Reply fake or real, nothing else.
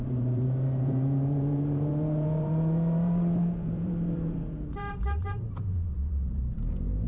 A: fake